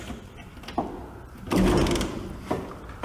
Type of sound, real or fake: real